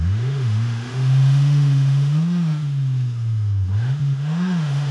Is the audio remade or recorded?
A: remade